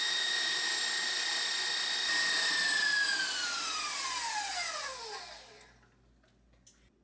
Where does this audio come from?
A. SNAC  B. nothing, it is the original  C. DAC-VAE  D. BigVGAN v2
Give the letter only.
B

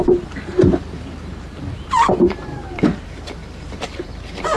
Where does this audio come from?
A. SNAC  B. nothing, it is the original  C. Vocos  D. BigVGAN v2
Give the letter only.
D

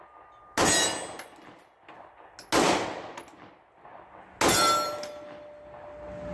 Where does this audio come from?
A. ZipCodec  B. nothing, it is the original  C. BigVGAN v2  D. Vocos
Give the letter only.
B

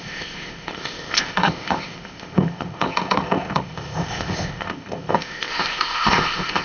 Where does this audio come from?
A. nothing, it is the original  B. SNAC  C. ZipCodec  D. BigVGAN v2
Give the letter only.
C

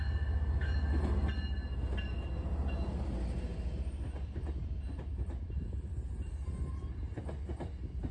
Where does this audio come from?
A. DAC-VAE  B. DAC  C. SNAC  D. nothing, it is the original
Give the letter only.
D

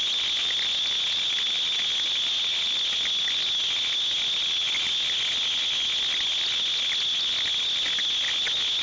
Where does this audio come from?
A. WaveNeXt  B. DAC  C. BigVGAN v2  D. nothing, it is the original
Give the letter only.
D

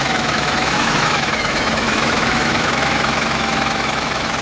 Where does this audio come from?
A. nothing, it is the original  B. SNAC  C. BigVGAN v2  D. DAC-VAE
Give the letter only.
D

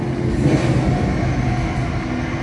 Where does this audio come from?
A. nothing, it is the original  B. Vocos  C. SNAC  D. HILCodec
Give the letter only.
A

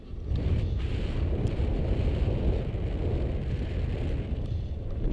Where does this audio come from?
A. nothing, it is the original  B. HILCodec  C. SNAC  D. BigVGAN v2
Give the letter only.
A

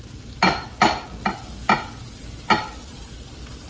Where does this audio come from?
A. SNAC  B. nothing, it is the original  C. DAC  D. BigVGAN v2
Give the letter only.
B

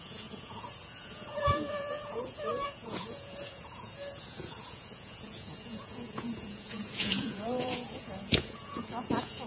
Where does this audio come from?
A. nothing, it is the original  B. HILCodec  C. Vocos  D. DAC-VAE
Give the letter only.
C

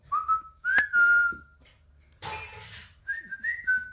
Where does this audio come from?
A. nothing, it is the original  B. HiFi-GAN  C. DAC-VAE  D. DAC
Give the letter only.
A